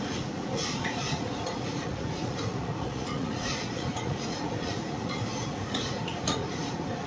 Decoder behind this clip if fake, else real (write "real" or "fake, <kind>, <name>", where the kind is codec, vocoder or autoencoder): fake, vocoder, Vocos